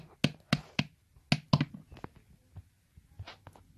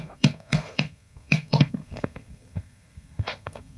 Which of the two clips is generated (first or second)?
second